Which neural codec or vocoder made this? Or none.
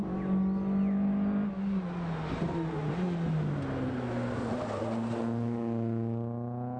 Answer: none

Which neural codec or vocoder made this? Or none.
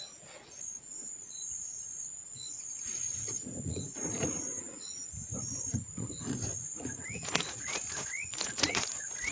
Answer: vocoder, Vocos